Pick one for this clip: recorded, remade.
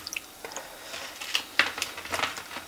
remade